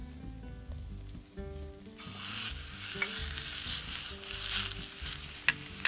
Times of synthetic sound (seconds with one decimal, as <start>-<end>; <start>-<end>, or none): none